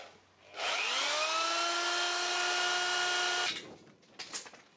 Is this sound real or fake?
real